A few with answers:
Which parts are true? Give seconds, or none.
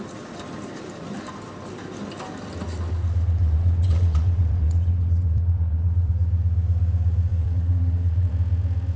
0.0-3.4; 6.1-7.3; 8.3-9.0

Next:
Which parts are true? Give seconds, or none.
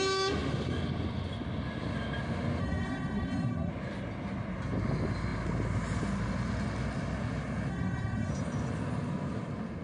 0.0-2.6; 3.7-7.7; 8.3-9.8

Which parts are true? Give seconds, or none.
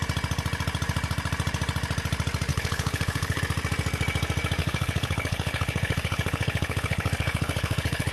0.0-2.5; 3.4-4.6